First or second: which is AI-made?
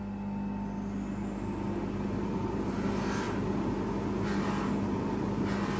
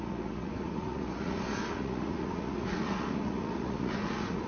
second